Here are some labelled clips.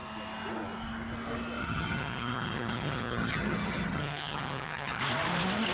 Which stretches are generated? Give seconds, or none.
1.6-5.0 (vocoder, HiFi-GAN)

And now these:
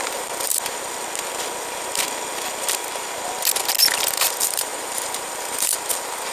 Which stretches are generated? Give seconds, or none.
0.0-0.5 (vocoder, BigVGAN v2); 4.0-6.3

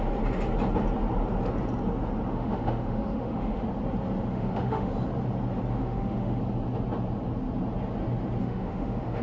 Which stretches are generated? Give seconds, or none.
2.3-3.6 (autoencoder, DAC-VAE); 4.3-4.9; 5.8-6.4; 8.4-9.2

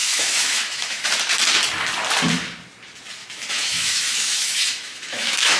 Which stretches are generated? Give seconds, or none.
0.0-1.1 (autoencoder, DAC-VAE); 3.2-5.6

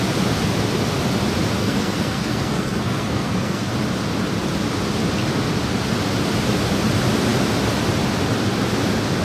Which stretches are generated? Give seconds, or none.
1.6-3.7 (codec, SNAC)